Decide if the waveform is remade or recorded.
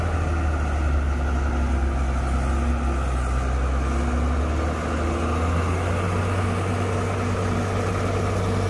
recorded